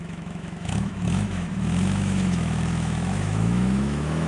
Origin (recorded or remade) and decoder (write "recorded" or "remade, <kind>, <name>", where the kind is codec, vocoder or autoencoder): remade, autoencoder, DAC-VAE